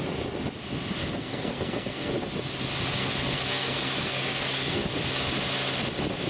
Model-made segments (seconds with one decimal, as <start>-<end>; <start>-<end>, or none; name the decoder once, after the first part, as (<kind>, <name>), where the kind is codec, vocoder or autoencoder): 1.0-2.1 (codec, SNAC); 3.0-4.9